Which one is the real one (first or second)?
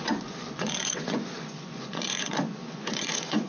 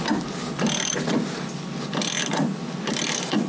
second